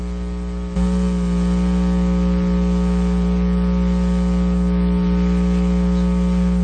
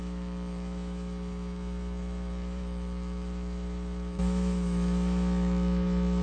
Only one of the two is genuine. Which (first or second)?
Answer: first